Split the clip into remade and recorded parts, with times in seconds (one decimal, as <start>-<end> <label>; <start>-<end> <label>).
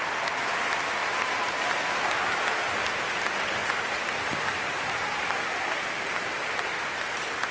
0.0-7.5 recorded